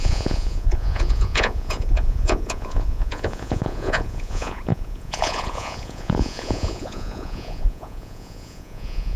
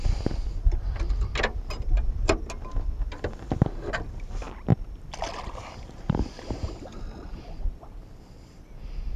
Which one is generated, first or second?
first